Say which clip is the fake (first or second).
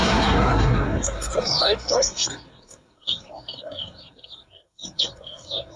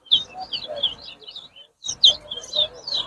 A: first